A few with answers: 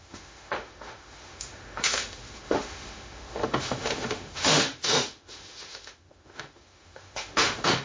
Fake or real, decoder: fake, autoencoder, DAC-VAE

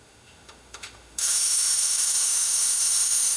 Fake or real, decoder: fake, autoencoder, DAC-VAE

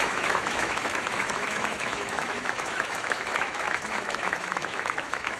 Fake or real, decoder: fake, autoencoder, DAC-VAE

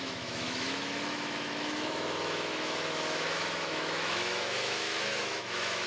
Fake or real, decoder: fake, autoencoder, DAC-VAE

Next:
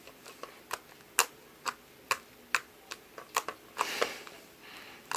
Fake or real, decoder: real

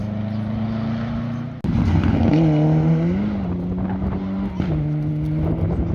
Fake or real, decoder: real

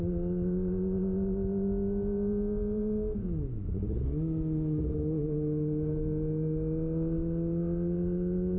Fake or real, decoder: real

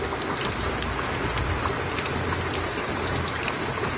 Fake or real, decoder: real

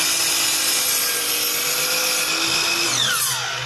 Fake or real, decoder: real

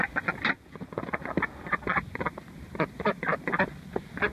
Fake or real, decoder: real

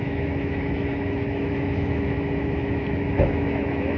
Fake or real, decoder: fake, autoencoder, DAC-VAE